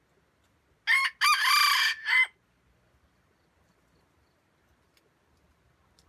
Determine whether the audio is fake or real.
real